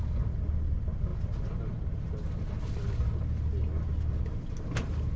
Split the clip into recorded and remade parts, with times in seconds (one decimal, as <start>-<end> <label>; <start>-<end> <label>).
0.0-5.2 recorded